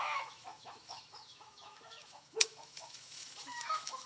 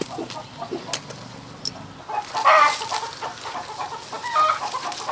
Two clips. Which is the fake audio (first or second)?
first